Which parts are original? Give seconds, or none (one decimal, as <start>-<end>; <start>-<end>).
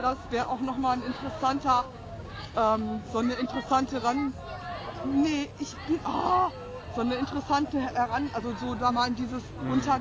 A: 3.5-10.0